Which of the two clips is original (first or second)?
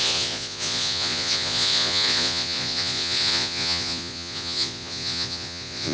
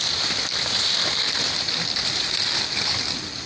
second